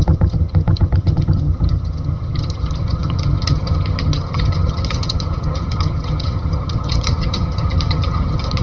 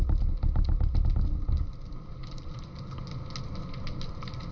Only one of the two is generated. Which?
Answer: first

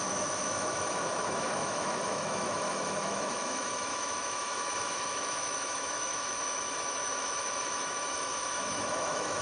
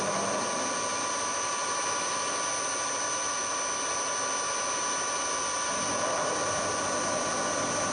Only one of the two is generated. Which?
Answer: first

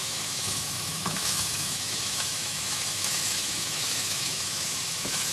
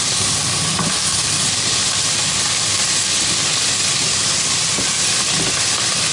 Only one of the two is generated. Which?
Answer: first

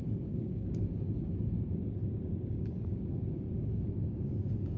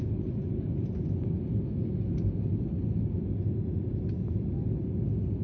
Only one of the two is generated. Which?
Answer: first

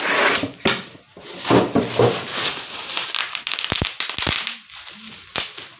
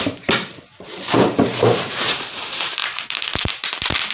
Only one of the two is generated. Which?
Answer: second